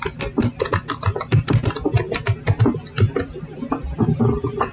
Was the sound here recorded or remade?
recorded